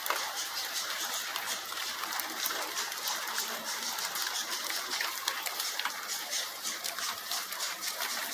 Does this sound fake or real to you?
fake